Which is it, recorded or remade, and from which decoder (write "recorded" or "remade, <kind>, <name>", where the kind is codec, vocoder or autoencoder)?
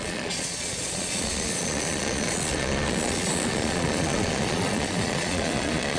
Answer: remade, vocoder, Vocos